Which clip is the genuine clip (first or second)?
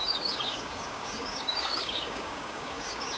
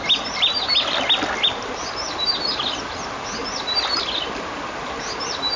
second